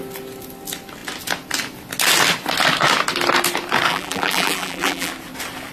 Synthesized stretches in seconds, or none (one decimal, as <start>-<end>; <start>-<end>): 3.9-5.1